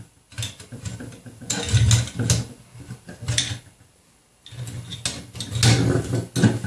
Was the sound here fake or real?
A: real